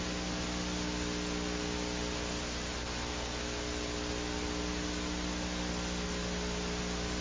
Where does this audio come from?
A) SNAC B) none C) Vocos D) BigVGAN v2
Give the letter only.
B